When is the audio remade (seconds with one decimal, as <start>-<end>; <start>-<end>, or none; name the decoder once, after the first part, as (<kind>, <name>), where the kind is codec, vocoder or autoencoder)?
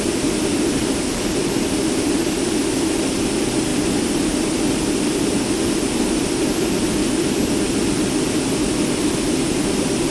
none